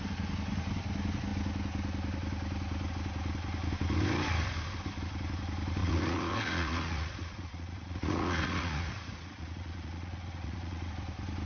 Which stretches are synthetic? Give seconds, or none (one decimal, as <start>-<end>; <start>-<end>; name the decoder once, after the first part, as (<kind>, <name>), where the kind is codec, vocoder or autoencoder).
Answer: 5.8-10.9 (vocoder, Vocos)